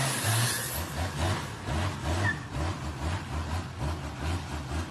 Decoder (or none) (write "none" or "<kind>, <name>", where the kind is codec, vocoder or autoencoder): none